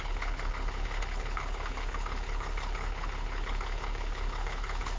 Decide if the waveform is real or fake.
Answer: fake